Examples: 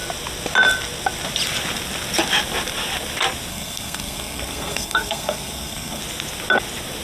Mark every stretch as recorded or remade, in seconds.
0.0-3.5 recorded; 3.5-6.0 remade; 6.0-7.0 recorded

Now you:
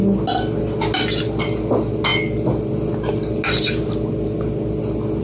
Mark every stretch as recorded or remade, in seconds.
0.0-5.2 recorded

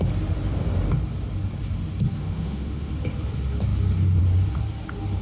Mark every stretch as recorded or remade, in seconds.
0.0-2.2 recorded; 2.2-2.9 remade; 2.9-5.2 recorded